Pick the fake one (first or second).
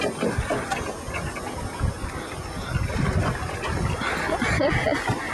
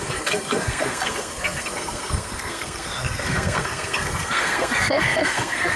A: second